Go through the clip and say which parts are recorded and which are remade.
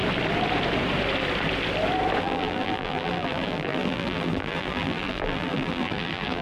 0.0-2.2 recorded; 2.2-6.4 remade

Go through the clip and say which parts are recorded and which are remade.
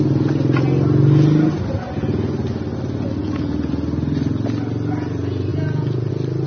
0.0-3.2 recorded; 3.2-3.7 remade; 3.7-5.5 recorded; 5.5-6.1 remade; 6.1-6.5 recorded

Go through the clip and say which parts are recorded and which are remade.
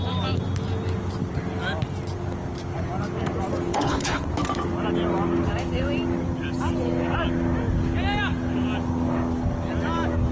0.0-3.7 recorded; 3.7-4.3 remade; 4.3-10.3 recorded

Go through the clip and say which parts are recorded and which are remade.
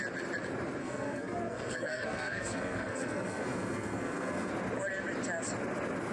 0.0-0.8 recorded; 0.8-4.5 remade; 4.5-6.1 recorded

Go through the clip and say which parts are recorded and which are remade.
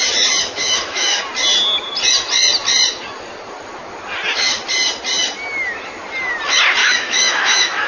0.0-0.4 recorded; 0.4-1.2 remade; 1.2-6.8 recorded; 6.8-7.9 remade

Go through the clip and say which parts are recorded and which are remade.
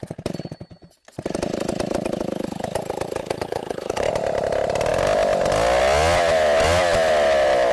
0.0-3.2 recorded; 3.2-4.1 remade; 4.1-7.7 recorded